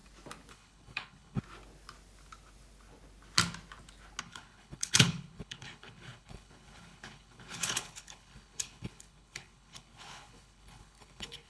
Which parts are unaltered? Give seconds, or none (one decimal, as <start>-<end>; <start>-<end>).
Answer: 0.0-0.5; 1.4-4.2